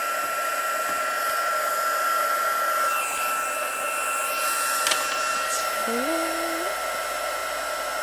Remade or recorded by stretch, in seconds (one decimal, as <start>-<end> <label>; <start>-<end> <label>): 0.0-8.0 recorded